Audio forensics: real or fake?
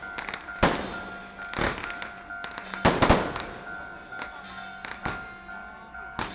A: real